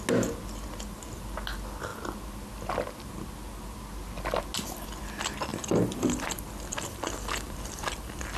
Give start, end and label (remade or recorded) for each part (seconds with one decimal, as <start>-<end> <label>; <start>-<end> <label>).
0.0-5.5 recorded; 5.5-8.4 remade